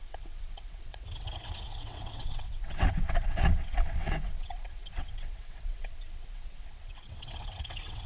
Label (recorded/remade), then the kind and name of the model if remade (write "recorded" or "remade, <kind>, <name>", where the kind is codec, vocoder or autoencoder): remade, vocoder, WaveNeXt